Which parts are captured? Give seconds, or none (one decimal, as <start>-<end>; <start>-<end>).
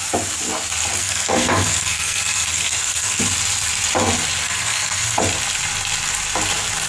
0.0-1.0; 3.2-4.4; 5.2-6.9